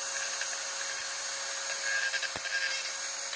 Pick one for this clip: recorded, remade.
remade